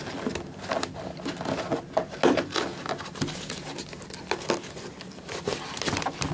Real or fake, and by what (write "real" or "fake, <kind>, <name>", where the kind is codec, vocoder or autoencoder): real